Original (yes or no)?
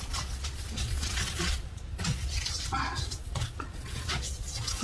no